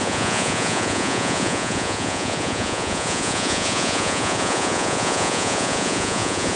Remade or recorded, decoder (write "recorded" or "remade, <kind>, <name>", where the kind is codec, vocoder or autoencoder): remade, vocoder, Vocos